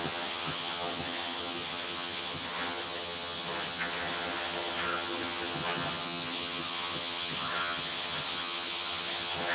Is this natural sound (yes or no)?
no